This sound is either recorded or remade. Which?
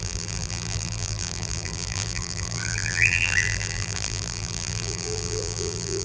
remade